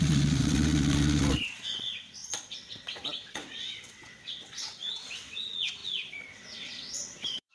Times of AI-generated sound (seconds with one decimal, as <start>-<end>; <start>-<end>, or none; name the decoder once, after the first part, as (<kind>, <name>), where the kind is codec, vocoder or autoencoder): 0.0-7.5 (vocoder, WaveNeXt)